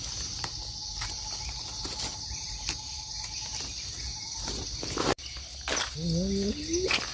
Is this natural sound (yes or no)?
yes